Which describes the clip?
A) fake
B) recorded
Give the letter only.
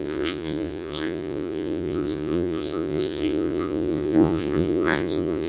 A